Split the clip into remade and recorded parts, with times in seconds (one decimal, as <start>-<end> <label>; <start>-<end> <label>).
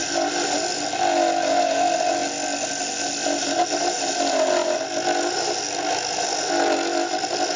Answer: 0.0-7.6 recorded